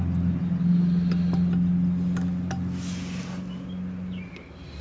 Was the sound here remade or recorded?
recorded